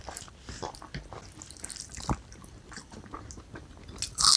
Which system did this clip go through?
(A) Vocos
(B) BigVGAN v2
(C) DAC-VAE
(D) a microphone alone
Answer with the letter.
D